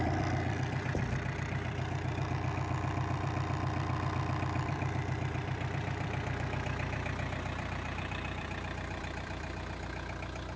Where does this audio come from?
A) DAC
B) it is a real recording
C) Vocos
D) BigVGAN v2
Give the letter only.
D